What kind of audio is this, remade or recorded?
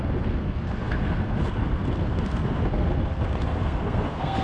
remade